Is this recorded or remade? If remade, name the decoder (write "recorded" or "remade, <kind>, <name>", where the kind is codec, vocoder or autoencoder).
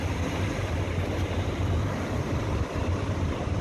remade, vocoder, BigVGAN v2